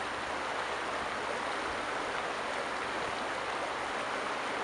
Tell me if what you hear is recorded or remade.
recorded